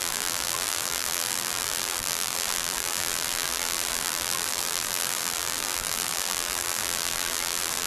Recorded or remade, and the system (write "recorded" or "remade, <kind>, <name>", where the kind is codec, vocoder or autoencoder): remade, vocoder, BigVGAN v2